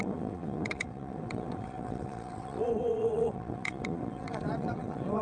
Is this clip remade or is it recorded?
remade